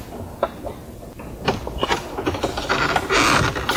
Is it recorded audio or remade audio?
recorded